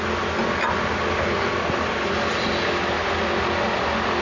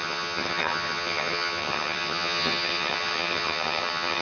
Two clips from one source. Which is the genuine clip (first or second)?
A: first